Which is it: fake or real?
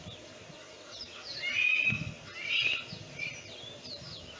real